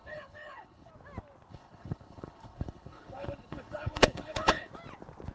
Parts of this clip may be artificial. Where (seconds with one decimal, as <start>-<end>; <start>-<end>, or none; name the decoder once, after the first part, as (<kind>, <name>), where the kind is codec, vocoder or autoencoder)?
0.0-0.9 (codec, HILCodec); 1.5-4.7